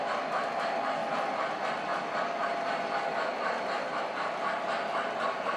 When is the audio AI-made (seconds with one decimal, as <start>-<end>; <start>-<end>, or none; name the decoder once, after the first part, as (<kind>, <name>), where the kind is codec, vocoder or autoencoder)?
none